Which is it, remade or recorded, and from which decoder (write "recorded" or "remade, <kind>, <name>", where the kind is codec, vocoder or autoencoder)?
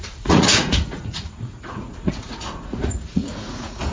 remade, vocoder, Vocos